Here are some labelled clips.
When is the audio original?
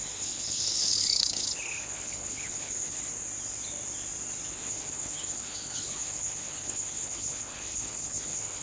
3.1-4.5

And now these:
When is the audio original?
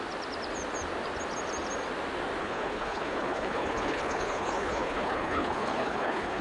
0.0-2.4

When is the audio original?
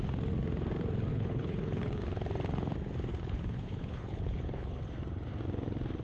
0.0-1.1; 2.0-3.1; 4.8-6.0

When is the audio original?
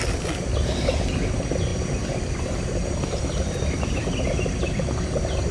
0.0-5.5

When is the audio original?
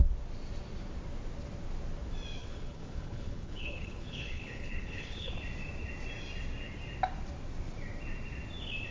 0.0-2.4; 5.3-8.9